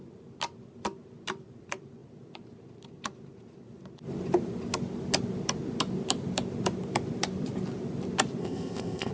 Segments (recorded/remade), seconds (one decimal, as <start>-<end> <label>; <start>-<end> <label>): 0.0-8.4 recorded; 8.4-9.1 remade